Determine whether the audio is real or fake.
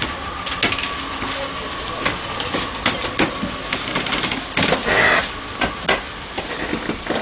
real